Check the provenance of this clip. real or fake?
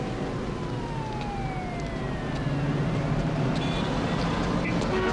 real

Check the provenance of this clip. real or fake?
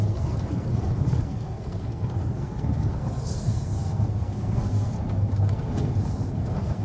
fake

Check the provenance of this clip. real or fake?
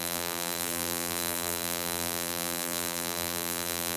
fake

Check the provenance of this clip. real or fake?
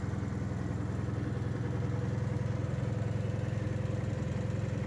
real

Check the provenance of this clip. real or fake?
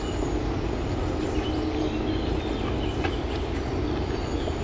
real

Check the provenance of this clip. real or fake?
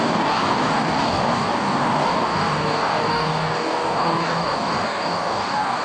fake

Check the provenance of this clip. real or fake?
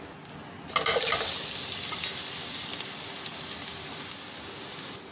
real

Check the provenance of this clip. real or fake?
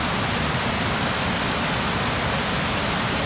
real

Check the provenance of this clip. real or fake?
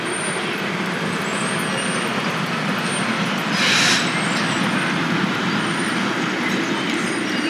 real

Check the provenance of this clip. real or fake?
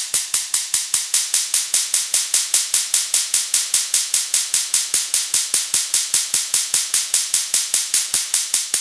real